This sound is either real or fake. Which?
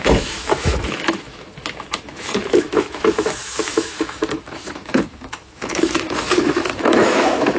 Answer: fake